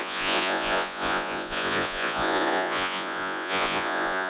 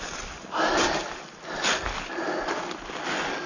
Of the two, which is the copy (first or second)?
first